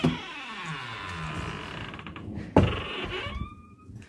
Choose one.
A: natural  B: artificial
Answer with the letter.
A